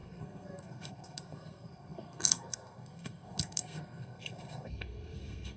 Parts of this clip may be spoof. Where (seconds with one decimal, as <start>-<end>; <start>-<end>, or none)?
0.0-5.6